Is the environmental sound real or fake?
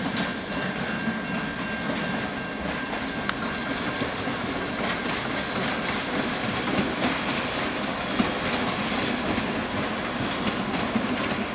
real